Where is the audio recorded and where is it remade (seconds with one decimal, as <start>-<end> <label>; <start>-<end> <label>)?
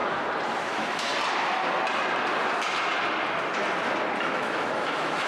0.0-0.6 recorded; 0.6-1.1 remade; 1.1-4.3 recorded; 4.3-5.3 remade